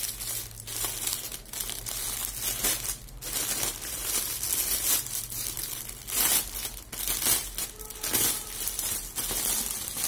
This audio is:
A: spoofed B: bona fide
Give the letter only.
B